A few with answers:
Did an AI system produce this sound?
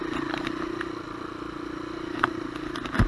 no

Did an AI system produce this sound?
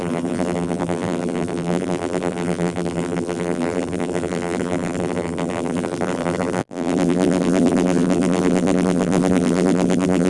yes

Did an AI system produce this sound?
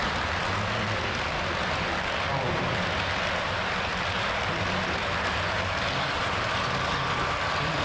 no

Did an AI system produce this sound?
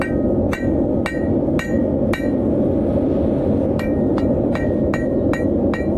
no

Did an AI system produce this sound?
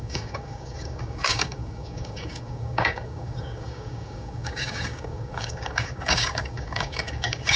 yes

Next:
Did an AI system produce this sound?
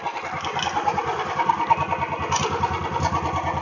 no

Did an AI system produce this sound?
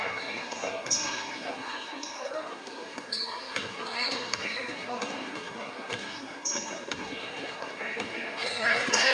yes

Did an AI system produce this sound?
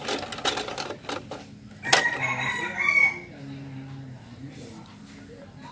no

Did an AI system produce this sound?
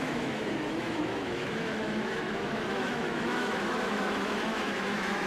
yes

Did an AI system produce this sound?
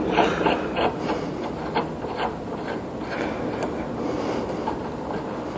no